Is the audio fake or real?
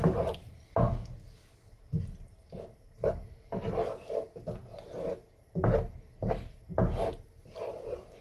real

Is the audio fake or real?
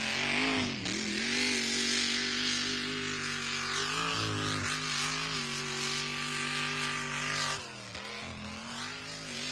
real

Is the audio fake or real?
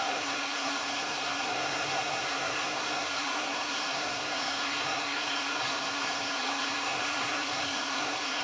fake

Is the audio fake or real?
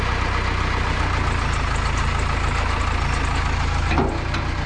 real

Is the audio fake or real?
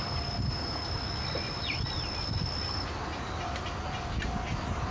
real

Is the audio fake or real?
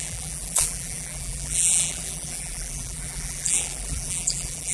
fake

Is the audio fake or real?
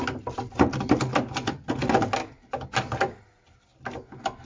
real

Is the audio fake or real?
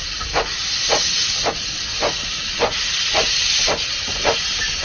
real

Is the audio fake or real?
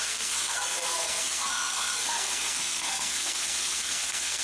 fake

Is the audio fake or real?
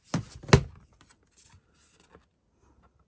real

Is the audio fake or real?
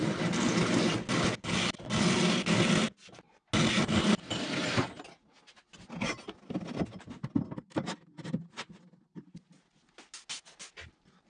real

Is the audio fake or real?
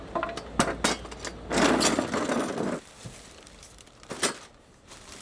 real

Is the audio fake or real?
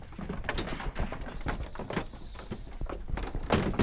real